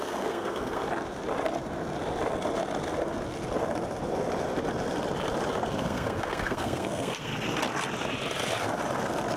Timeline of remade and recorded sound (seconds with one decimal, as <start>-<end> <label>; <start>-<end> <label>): 0.0-0.8 remade; 0.8-5.8 recorded; 5.8-7.3 remade; 7.3-9.4 recorded